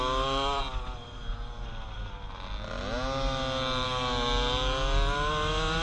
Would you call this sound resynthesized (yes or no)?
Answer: no